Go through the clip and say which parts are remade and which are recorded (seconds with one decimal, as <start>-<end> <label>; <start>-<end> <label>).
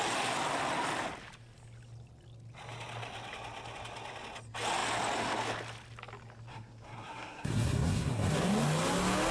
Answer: 0.0-6.5 recorded; 6.5-8.5 remade; 8.5-9.3 recorded